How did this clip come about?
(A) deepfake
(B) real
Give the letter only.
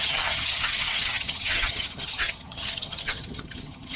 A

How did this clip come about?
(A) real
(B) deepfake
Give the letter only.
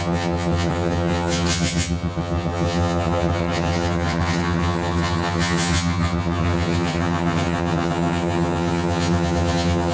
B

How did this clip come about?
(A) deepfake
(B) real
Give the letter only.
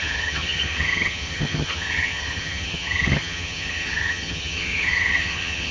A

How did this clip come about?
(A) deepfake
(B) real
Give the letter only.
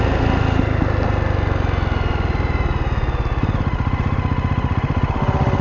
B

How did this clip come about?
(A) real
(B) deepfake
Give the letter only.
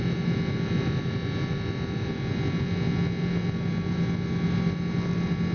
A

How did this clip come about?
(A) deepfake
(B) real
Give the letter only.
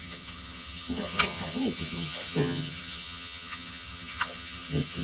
A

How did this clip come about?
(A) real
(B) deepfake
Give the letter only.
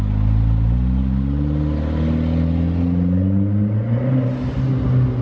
A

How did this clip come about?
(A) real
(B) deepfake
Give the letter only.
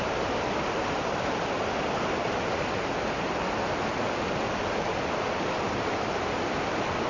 A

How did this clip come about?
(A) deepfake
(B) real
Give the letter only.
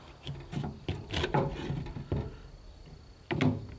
B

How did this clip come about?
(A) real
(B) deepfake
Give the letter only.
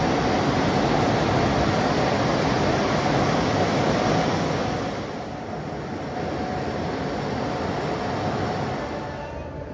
A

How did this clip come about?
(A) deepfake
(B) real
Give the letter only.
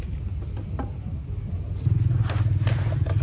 B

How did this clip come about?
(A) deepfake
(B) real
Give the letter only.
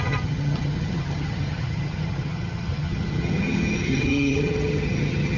A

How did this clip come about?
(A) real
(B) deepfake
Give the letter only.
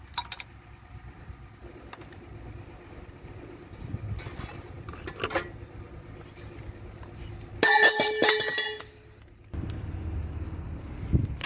A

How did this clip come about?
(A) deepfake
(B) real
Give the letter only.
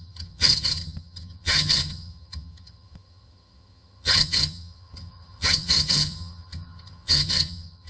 A